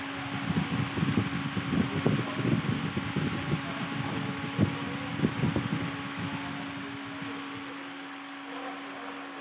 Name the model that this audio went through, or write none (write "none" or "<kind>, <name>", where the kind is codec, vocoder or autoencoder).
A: none